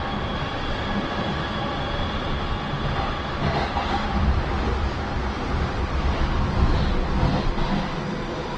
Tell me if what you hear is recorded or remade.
recorded